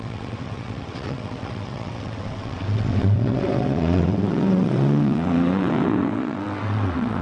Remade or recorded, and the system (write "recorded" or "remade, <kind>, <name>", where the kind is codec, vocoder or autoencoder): remade, vocoder, WaveNeXt